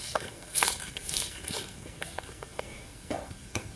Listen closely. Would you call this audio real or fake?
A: fake